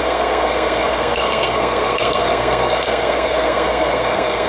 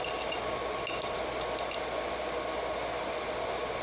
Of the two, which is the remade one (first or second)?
first